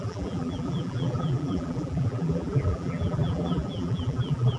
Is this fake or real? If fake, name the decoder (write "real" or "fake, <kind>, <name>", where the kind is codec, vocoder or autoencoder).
fake, vocoder, BigVGAN v2